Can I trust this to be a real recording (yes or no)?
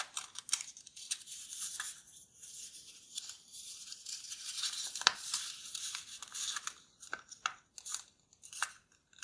no